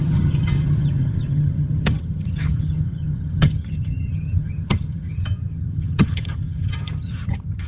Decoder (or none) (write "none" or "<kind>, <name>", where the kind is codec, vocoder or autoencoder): vocoder, HiFi-GAN